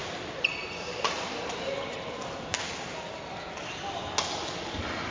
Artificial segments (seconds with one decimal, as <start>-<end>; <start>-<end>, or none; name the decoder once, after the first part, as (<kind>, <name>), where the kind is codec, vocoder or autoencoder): none